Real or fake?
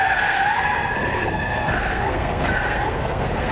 fake